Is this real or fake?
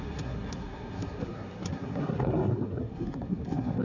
fake